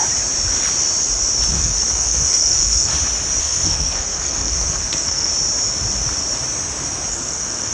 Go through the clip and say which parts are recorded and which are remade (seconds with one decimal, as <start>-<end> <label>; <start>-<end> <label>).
0.0-1.5 recorded; 1.5-2.9 remade; 2.9-3.4 recorded; 3.4-5.3 remade; 5.3-7.1 recorded; 7.1-7.7 remade